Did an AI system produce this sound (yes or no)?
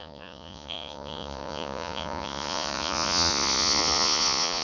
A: yes